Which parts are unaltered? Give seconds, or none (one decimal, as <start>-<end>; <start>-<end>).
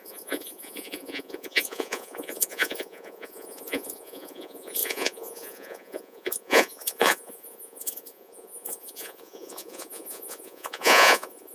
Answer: none